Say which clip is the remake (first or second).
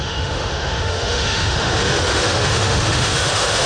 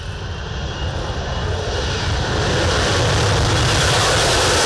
first